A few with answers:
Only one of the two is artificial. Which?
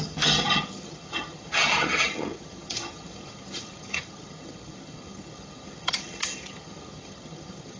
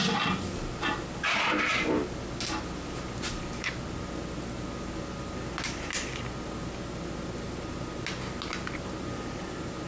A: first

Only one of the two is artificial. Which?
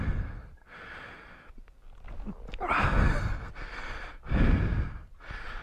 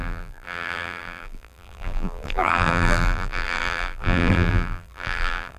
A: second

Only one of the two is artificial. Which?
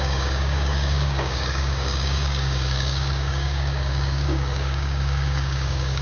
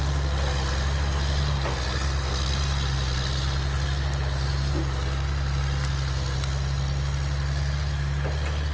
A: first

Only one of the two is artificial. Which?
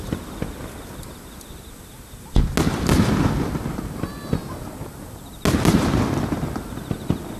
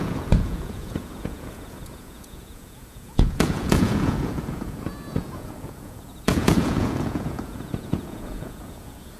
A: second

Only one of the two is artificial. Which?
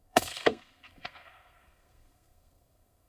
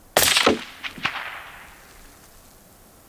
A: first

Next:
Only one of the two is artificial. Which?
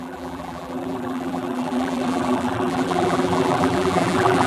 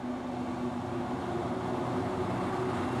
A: first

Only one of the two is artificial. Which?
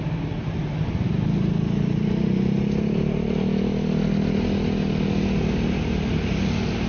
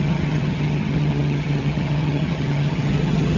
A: second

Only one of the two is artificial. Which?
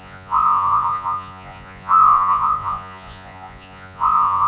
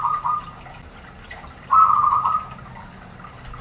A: first